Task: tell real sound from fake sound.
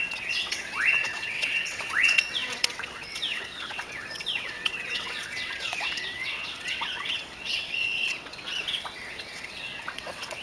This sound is fake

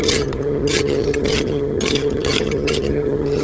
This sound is fake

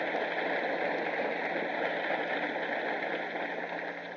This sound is real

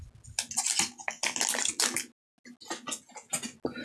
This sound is real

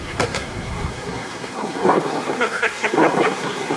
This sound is fake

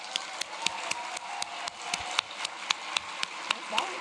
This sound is real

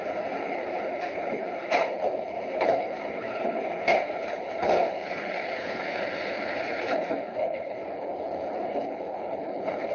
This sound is fake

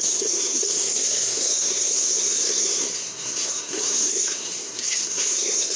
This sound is fake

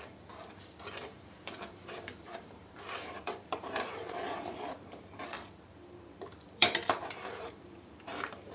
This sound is fake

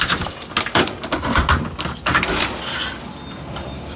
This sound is real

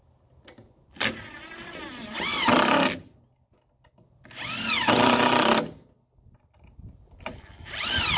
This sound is real